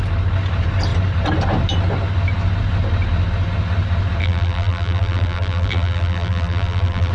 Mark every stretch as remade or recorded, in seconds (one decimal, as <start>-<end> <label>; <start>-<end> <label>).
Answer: 0.0-4.2 recorded; 4.2-7.1 remade